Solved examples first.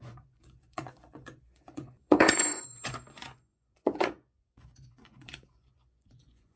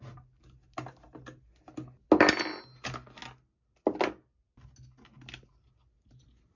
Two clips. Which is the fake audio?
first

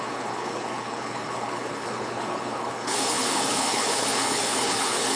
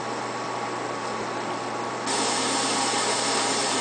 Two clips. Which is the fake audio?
first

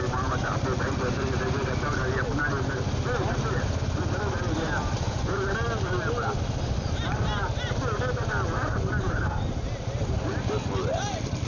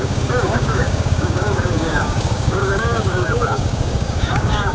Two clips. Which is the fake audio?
second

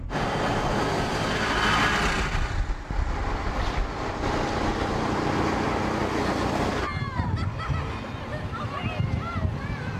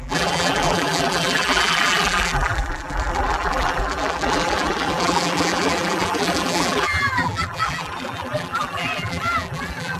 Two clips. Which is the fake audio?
second